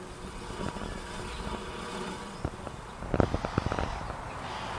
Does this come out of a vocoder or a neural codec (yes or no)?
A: no